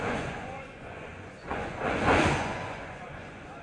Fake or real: fake